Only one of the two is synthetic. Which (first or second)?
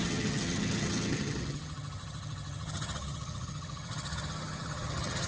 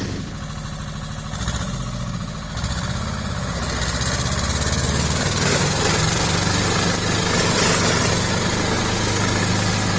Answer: first